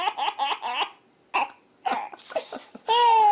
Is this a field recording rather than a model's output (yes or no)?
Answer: yes